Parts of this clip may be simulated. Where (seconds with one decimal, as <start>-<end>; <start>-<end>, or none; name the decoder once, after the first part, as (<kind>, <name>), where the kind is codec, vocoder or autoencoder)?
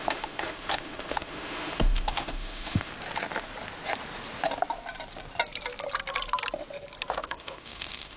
0.0-2.9 (autoencoder, DAC-VAE); 7.1-8.2